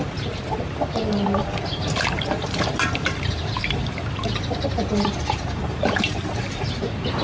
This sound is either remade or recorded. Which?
remade